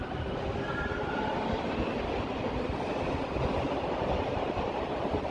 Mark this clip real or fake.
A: real